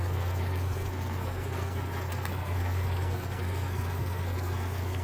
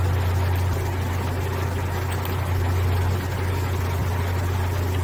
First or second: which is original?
second